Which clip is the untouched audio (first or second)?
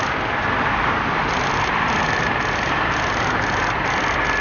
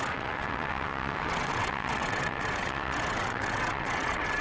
first